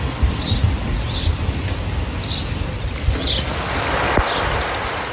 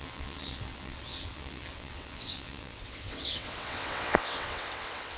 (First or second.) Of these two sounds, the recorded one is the first